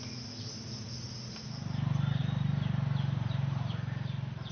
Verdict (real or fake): real